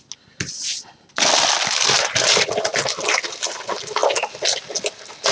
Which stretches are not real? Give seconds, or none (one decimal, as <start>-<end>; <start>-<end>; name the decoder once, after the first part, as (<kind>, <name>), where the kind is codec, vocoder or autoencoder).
none

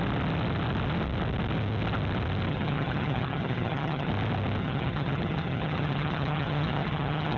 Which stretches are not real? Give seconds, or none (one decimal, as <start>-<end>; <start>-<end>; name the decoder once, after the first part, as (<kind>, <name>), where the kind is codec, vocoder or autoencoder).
2.5-4.1 (vocoder, HiFi-GAN); 4.6-7.4

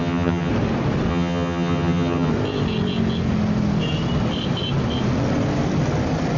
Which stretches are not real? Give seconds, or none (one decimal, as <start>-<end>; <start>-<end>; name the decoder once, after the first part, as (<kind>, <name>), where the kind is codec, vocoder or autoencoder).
0.0-0.5 (vocoder, HiFi-GAN); 1.1-2.3

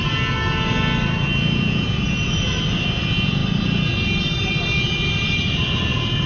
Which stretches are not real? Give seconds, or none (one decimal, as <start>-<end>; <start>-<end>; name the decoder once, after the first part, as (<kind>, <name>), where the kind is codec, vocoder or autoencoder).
none

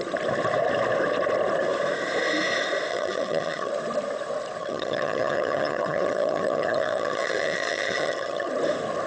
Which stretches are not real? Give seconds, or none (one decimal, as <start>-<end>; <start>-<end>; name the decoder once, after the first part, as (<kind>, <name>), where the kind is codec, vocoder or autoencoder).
2.9-3.7 (vocoder, HiFi-GAN); 4.6-8.5

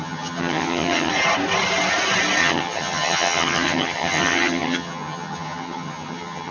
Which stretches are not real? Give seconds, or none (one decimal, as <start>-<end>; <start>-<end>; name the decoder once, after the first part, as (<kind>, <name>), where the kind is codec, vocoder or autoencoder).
0.0-1.1 (vocoder, HiFi-GAN); 2.4-6.5